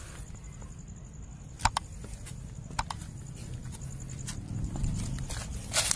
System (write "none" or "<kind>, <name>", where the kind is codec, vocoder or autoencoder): none